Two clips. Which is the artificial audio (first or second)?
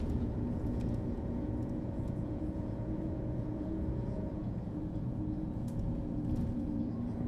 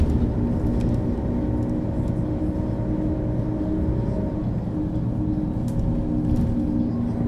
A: first